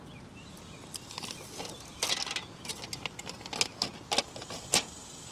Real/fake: real